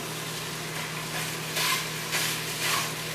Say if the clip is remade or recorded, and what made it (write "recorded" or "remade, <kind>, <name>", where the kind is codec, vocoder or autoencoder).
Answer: recorded